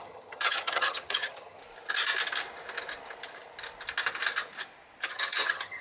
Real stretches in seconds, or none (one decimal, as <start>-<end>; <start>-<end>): 1.6-5.1